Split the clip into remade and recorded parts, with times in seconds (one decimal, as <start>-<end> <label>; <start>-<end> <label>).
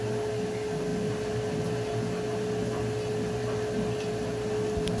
0.0-5.0 recorded